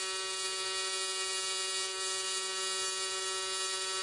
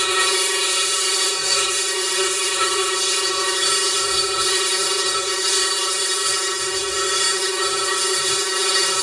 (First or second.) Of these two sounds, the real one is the first